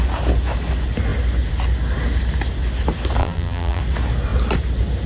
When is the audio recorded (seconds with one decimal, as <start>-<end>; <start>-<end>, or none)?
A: 0.0-3.2; 3.8-5.1